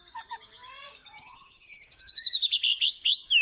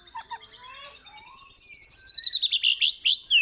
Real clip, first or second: second